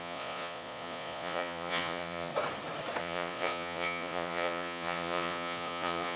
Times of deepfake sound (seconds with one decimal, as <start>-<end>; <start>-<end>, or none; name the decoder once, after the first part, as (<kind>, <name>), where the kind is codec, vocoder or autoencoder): 0.0-2.3 (vocoder, Vocos); 3.0-6.2